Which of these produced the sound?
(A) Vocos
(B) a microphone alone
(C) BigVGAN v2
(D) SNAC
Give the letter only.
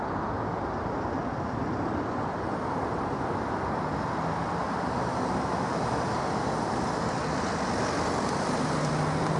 B